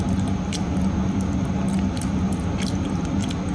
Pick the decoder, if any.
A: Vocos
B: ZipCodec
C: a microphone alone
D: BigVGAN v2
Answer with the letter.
C